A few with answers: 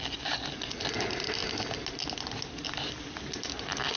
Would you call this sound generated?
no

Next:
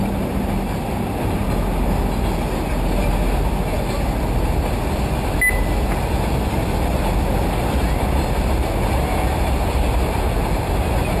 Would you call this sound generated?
no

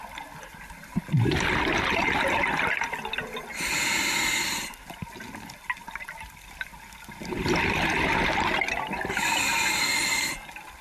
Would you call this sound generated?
no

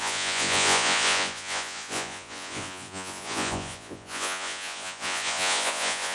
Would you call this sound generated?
yes